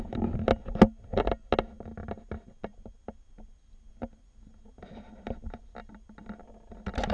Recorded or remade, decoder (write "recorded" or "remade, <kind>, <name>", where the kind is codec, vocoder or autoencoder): recorded